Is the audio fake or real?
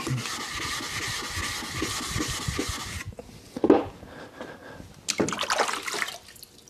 real